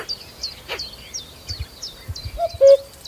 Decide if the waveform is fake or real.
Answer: real